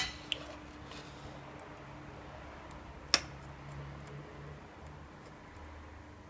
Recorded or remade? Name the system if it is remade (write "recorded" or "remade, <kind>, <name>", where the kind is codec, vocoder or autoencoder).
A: recorded